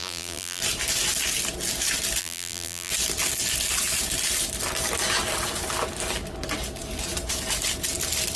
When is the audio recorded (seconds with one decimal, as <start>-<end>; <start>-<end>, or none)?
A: 0.6-2.2; 2.9-8.4

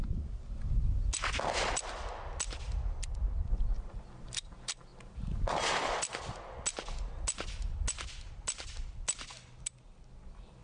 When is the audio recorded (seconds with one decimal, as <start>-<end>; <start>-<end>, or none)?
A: 0.0-10.6

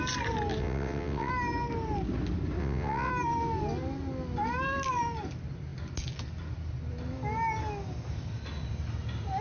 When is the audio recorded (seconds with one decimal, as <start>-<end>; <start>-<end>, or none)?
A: 0.0-0.6; 1.3-2.6; 3.1-9.4

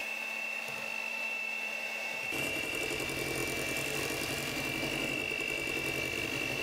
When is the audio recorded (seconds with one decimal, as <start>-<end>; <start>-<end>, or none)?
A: 0.6-1.1; 2.8-6.6